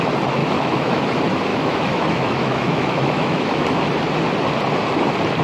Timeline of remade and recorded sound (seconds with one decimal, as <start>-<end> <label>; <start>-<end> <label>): 0.0-0.4 recorded; 0.4-1.0 remade; 1.0-1.5 recorded; 1.5-3.6 remade; 3.6-5.4 recorded